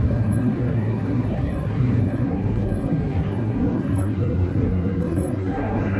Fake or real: fake